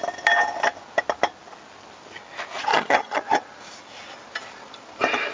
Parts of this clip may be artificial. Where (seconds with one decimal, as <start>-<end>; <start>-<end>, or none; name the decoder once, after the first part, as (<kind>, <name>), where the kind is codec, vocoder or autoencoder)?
2.7-3.2 (vocoder, HiFi-GAN)